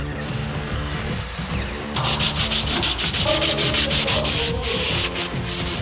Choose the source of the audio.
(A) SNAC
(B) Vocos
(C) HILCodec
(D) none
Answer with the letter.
D